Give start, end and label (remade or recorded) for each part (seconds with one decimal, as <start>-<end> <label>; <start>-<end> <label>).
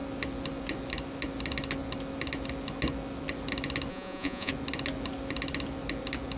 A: 0.0-3.9 recorded; 3.9-4.5 remade; 4.5-6.4 recorded